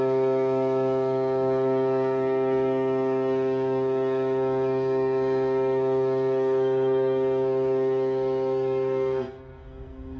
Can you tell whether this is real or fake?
fake